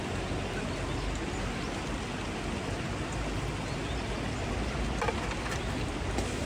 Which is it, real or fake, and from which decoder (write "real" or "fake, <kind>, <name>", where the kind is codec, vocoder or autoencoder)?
real